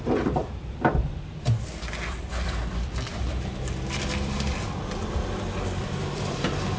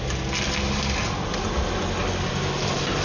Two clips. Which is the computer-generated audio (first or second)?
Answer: first